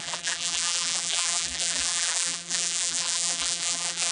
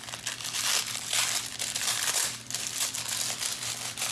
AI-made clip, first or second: first